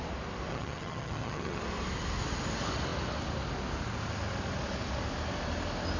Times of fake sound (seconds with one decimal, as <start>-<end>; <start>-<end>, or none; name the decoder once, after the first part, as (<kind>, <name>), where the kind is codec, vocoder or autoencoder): 0.5-1.6 (vocoder, HiFi-GAN)